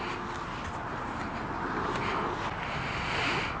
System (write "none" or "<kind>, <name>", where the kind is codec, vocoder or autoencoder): none